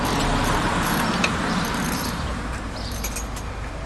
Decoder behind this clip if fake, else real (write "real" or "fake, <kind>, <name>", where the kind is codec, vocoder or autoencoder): fake, vocoder, BigVGAN v2